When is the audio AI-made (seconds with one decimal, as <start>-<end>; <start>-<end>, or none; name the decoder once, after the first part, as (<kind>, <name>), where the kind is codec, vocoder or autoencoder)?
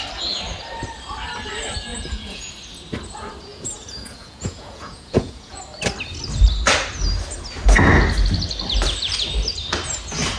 1.9-2.5 (vocoder, Vocos); 3.5-5.6